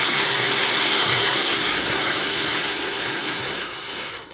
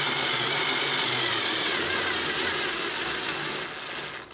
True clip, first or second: second